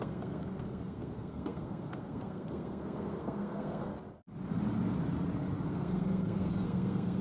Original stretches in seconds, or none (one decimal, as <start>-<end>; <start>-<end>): 3.9-5.7